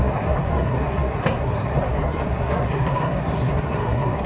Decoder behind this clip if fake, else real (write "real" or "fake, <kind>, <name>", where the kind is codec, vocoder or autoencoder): fake, codec, SNAC